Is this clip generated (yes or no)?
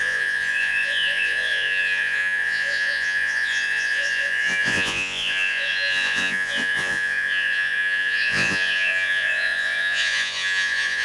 yes